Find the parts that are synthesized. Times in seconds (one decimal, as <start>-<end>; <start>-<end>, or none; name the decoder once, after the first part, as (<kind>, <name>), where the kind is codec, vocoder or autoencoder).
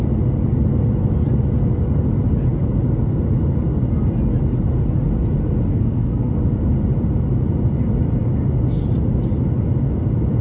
5.7-6.4 (codec, SNAC)